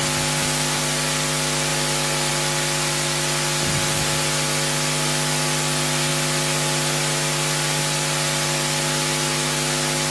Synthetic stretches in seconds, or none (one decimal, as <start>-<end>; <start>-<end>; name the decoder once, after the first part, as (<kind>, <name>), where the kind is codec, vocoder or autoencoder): none